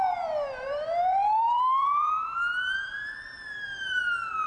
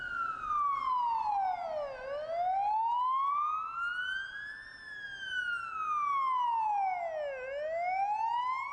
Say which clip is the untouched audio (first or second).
second